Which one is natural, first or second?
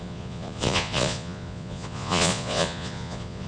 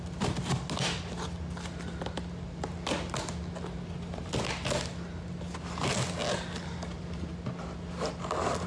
second